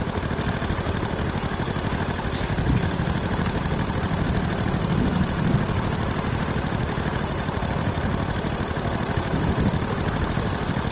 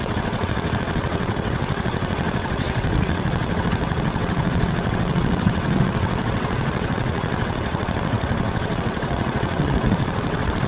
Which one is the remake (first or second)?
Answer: second